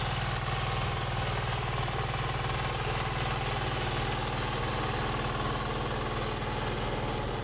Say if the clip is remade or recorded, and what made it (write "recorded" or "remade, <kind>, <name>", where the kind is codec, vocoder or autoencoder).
recorded